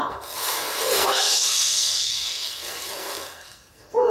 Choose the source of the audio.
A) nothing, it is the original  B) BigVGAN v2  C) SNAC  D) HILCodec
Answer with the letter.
C